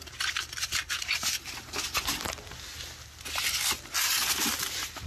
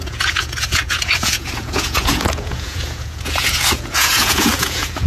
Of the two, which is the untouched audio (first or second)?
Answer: first